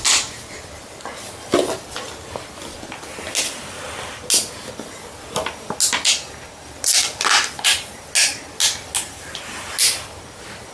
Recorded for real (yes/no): yes